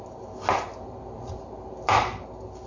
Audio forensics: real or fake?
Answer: real